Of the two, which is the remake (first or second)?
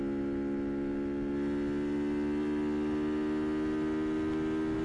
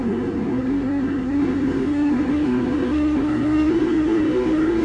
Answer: second